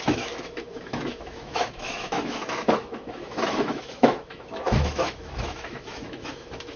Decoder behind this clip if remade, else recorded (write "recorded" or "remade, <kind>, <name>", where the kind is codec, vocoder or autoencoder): remade, autoencoder, DAC-VAE